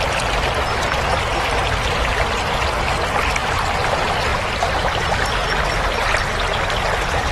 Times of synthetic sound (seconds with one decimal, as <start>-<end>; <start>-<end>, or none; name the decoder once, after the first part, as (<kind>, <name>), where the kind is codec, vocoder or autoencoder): 4.3-5.1 (vocoder, BigVGAN v2)